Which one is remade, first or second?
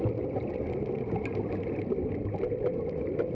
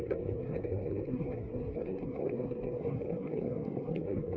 second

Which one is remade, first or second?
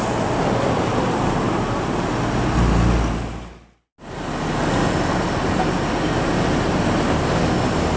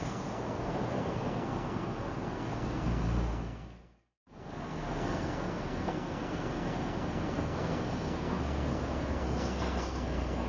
second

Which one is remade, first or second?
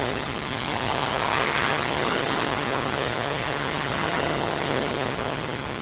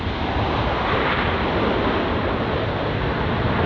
first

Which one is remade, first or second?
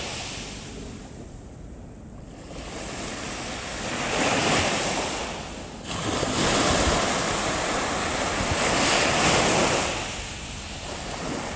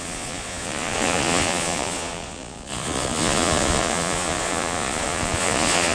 second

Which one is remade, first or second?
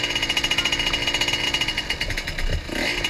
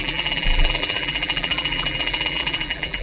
second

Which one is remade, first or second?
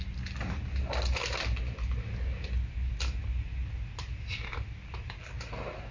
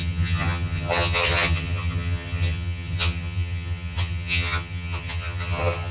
second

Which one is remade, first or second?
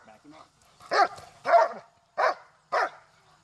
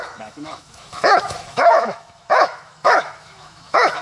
second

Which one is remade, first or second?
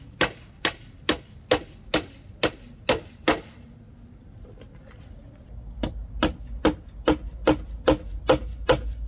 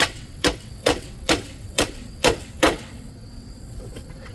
second